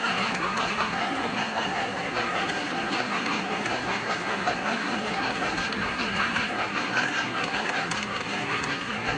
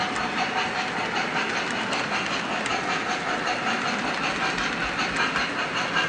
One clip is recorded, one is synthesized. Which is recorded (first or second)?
second